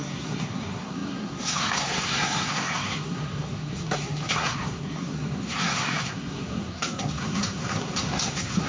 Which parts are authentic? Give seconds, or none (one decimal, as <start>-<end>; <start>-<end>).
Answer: none